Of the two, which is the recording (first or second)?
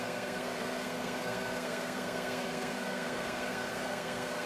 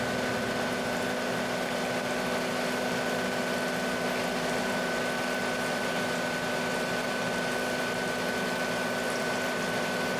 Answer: second